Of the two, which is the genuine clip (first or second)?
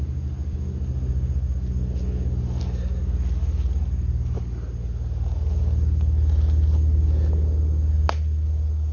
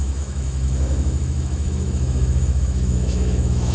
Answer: first